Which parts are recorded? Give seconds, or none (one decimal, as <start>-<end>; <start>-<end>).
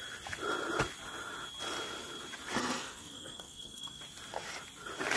0.0-2.6; 4.0-5.2